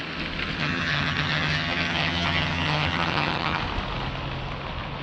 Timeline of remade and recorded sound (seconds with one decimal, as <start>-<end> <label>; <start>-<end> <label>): 0.0-0.6 recorded; 0.6-3.6 remade; 3.6-5.0 recorded